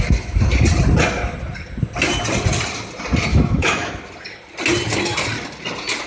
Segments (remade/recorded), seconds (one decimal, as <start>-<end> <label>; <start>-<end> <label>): 0.0-3.3 recorded; 3.3-3.9 remade; 3.9-6.1 recorded